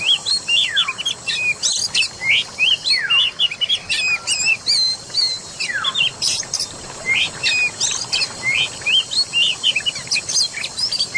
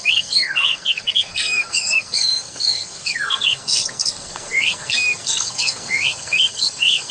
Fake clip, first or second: second